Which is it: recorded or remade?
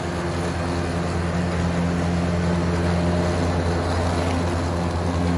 recorded